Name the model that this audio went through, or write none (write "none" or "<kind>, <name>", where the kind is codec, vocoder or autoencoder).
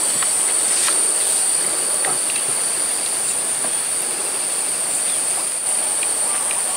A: none